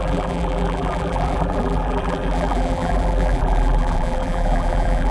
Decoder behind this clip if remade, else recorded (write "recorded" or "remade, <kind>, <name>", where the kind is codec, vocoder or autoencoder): remade, vocoder, BigVGAN v2